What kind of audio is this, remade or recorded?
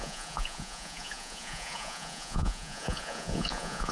remade